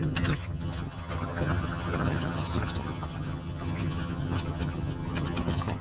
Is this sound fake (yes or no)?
yes